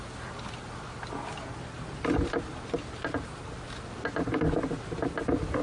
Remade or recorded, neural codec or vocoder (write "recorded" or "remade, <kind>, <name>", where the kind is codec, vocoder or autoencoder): recorded